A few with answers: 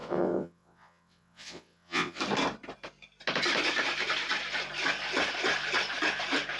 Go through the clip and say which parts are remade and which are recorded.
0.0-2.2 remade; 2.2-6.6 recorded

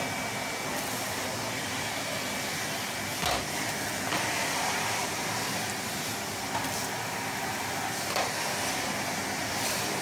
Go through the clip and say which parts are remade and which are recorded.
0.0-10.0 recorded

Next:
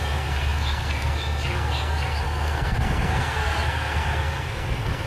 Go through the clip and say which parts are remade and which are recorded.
0.0-5.1 remade